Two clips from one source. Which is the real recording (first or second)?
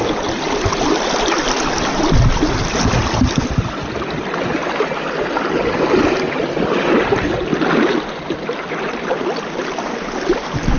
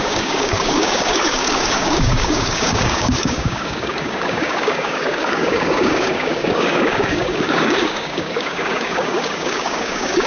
first